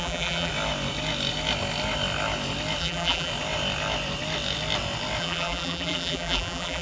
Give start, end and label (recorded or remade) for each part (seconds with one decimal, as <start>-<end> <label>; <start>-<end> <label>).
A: 0.0-0.5 remade; 0.5-2.8 recorded; 2.8-3.3 remade; 3.3-5.2 recorded; 5.2-6.8 remade